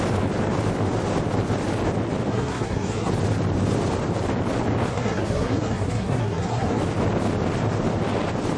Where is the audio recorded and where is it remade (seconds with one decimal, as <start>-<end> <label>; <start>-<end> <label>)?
0.0-2.3 recorded; 2.3-3.1 remade; 3.1-4.9 recorded; 4.9-6.8 remade; 6.8-8.6 recorded